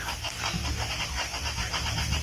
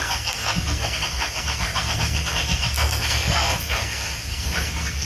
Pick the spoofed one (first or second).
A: second